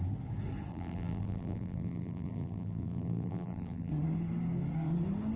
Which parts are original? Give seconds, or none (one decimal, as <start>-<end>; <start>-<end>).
0.0-0.7; 3.9-5.4